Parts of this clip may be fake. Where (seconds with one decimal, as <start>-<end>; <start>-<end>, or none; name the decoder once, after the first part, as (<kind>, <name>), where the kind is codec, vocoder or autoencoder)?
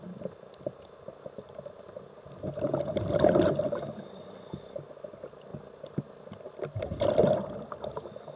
none